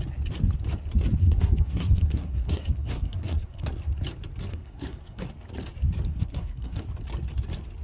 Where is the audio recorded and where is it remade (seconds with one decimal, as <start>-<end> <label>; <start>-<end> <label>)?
0.0-1.2 recorded; 1.2-3.7 remade; 3.7-4.5 recorded; 4.5-5.3 remade; 5.3-6.1 recorded; 6.1-6.8 remade; 6.8-7.8 recorded